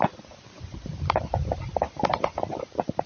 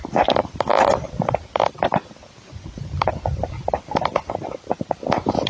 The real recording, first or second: second